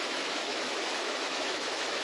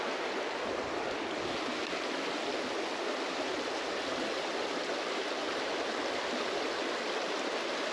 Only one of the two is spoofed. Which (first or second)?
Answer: first